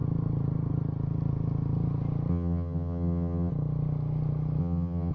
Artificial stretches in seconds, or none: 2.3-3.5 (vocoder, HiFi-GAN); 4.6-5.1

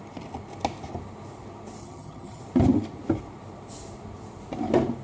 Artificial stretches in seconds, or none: 1.8-2.4 (vocoder, HiFi-GAN)

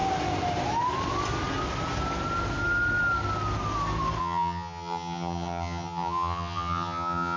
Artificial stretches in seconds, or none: 4.2-7.4 (vocoder, HiFi-GAN)

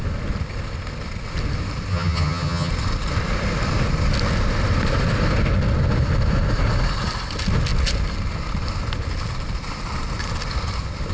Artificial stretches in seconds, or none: 1.9-2.7 (vocoder, HiFi-GAN)

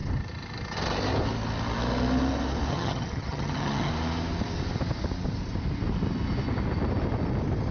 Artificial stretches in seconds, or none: 2.7-3.9 (vocoder, HiFi-GAN)

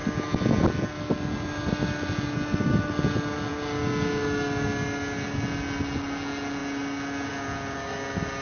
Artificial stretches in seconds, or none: none

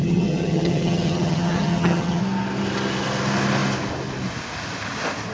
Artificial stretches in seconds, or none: 0.0-2.2 (vocoder, HiFi-GAN)

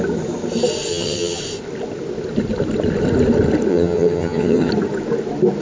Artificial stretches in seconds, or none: 0.9-1.4 (vocoder, HiFi-GAN); 3.7-4.7